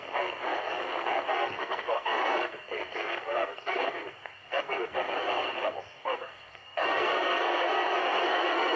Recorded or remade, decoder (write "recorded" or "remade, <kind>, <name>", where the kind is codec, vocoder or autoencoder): remade, codec, SNAC